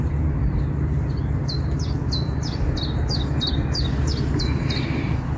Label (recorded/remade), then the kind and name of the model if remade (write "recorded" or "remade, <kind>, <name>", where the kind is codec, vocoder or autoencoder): recorded